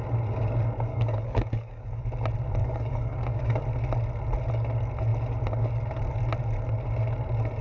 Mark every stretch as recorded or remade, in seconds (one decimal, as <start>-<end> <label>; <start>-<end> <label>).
0.0-0.9 recorded; 0.9-2.0 remade; 2.0-2.6 recorded; 2.6-3.6 remade; 3.6-7.6 recorded